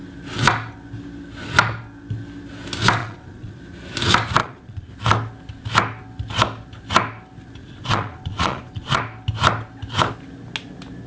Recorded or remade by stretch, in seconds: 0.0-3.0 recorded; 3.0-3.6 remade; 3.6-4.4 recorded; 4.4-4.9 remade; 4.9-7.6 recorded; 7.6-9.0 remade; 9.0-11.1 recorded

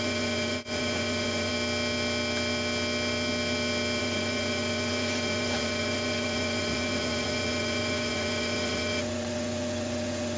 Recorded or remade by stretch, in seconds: 0.0-1.5 remade; 1.5-4.0 recorded; 4.0-10.4 remade

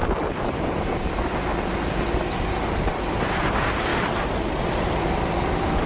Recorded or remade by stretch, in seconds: 0.0-5.9 recorded

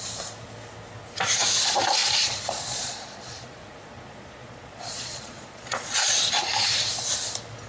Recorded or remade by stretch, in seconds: 0.0-2.0 recorded; 2.0-6.1 remade; 6.1-7.7 recorded

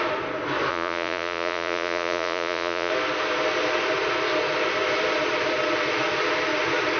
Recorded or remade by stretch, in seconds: 0.0-0.7 recorded; 0.7-2.9 remade; 2.9-7.0 recorded

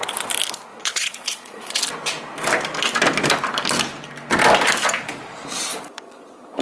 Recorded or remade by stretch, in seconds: 0.0-0.7 recorded; 0.7-1.8 remade; 1.8-5.7 recorded; 5.7-6.6 remade